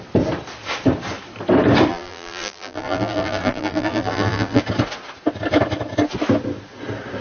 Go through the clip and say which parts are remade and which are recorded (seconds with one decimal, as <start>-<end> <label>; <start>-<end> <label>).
0.0-1.9 recorded; 1.9-4.6 remade; 4.6-7.2 recorded